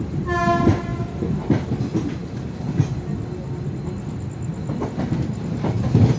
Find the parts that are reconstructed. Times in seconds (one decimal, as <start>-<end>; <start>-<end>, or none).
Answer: none